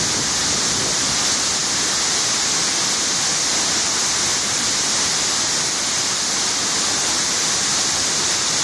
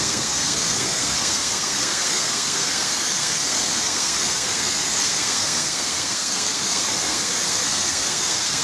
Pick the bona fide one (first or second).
first